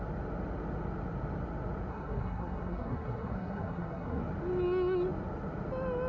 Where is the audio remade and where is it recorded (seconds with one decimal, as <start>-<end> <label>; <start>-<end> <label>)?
0.0-1.9 recorded; 1.9-4.2 remade; 4.2-6.1 recorded